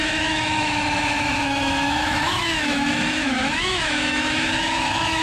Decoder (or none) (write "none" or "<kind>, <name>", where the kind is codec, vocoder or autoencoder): autoencoder, DAC-VAE